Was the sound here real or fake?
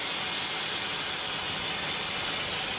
real